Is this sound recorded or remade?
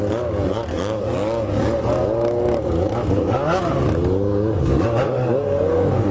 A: remade